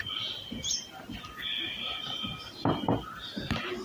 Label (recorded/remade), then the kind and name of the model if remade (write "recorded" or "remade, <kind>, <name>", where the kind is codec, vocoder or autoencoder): recorded